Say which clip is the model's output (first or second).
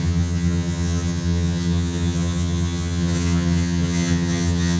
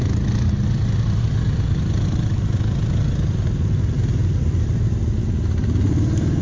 first